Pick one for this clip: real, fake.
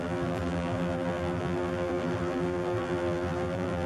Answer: fake